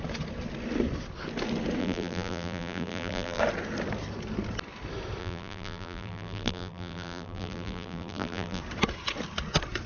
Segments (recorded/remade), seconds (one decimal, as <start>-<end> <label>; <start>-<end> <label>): 0.0-1.8 recorded; 1.8-3.4 remade; 3.4-5.2 recorded; 5.2-8.6 remade; 8.6-9.9 recorded